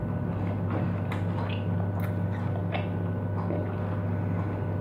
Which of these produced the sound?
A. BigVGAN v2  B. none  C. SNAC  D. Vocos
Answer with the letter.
B